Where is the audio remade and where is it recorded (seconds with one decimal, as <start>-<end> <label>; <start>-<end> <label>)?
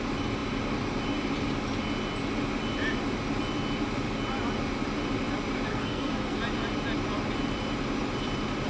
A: 0.0-5.7 recorded; 5.7-6.4 remade; 6.4-8.7 recorded